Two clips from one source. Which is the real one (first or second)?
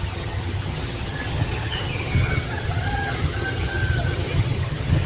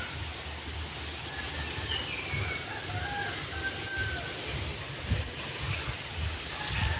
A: second